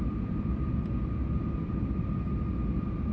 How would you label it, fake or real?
real